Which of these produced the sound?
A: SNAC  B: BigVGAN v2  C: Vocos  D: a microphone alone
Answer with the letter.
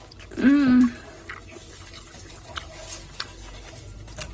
D